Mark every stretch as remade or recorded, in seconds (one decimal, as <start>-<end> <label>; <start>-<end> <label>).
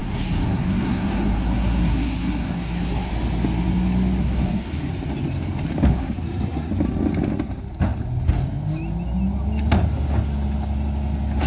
0.0-3.1 remade; 3.1-4.2 recorded; 4.2-4.9 remade; 4.9-5.9 recorded; 5.9-6.7 remade; 6.7-11.5 recorded